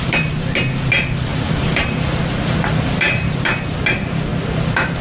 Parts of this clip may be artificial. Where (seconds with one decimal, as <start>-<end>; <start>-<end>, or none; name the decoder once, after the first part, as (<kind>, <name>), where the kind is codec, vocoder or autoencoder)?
0.0-5.0 (vocoder, BigVGAN v2)